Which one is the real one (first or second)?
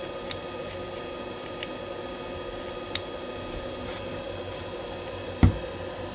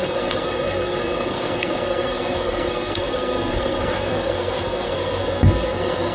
first